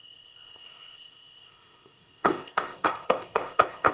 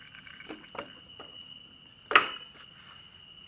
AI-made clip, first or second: first